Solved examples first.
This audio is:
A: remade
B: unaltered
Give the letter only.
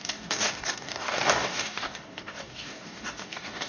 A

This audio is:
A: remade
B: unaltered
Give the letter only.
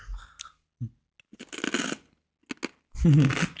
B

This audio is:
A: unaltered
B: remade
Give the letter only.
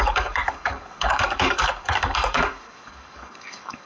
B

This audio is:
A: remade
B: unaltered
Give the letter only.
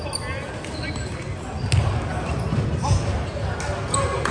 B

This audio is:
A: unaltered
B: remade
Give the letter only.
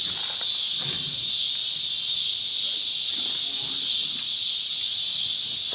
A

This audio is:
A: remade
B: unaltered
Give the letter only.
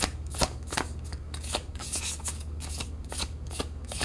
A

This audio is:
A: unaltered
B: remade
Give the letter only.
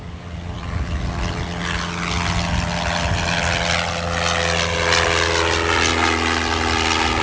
A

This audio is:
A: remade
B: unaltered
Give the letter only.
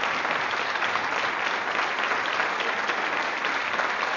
B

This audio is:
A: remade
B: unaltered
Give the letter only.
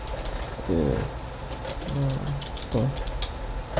B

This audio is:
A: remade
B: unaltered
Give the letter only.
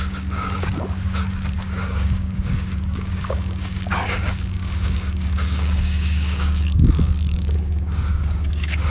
A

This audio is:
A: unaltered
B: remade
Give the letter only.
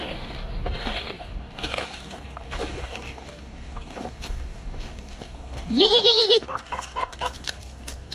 B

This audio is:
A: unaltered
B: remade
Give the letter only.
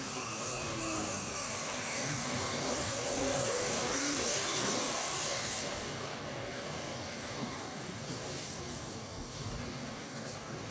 B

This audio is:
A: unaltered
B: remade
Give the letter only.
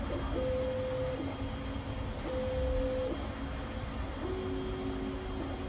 A